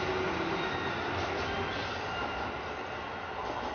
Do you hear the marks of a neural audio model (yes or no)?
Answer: no